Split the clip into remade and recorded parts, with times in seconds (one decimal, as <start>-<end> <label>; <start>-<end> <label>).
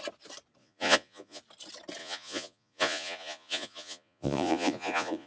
0.0-0.6 recorded; 0.6-1.4 remade; 1.4-2.0 recorded; 2.0-5.3 remade